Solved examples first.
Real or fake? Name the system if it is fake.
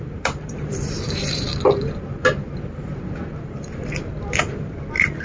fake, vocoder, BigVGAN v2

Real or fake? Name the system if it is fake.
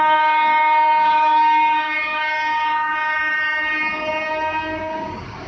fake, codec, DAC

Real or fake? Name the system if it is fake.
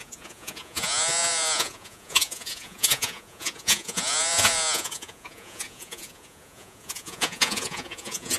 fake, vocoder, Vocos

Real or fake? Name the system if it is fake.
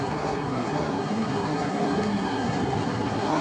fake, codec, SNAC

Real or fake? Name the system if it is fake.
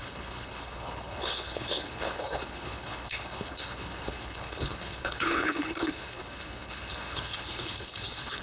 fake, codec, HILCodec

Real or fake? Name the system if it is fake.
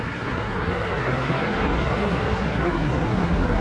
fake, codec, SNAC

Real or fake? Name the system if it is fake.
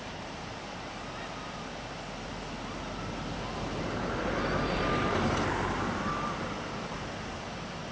real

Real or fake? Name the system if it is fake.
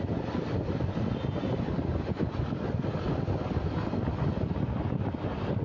real